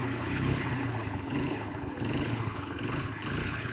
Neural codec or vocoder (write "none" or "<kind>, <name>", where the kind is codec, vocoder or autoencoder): codec, HILCodec